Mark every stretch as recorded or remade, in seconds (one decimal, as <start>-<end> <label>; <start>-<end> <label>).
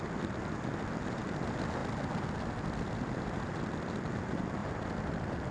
0.0-4.6 recorded; 4.6-5.5 remade